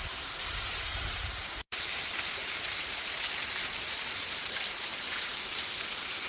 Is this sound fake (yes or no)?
yes